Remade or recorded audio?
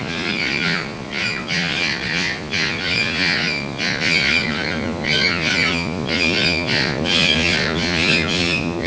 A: remade